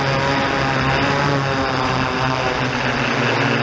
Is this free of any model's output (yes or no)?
yes